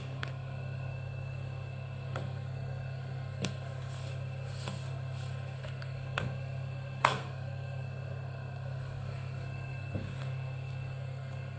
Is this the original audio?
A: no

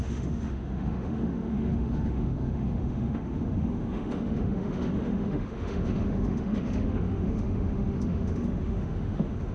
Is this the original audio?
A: no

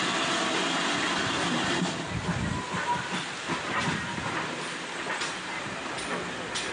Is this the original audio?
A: yes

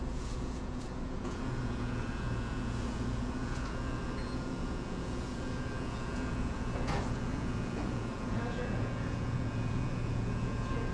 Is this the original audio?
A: no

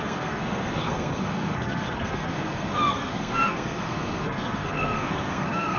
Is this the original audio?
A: no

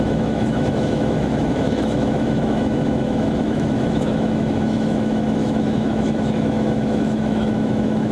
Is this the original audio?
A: no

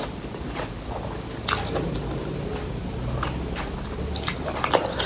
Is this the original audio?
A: yes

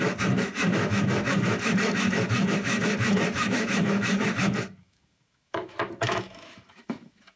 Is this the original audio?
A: no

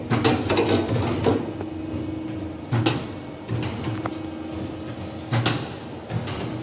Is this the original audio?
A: yes